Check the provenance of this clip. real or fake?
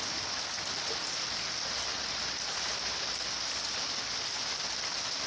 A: real